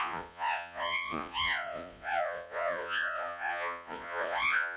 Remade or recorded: remade